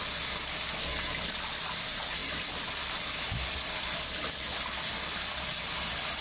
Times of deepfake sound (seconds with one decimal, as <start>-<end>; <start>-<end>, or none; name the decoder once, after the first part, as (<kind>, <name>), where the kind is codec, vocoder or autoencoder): none